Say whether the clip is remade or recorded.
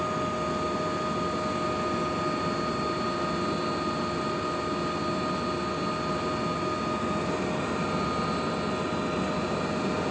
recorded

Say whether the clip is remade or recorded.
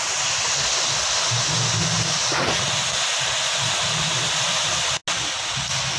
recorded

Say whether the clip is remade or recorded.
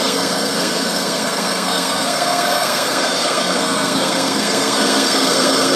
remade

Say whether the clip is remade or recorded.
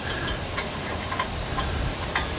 recorded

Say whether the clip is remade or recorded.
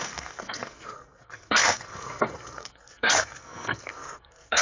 remade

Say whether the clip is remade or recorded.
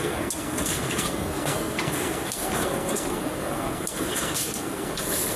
remade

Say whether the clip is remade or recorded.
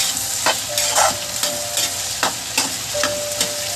recorded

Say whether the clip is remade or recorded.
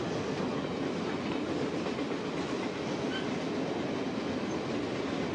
recorded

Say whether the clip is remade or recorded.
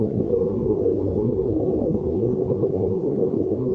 remade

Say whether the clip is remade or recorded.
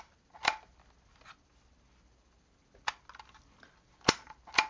recorded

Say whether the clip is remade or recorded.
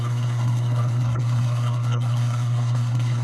remade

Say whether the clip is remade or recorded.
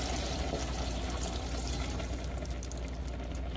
recorded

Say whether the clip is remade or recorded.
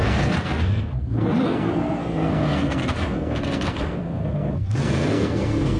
remade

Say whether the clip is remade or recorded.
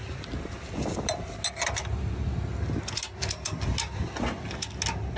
recorded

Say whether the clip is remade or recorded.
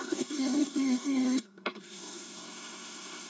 remade